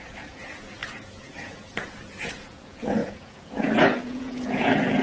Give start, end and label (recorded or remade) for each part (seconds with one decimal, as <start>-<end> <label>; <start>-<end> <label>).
0.0-5.0 remade